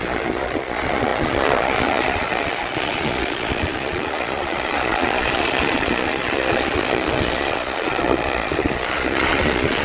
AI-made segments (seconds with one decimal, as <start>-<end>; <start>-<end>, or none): 0.0-9.8